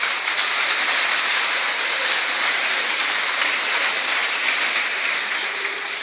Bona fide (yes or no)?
no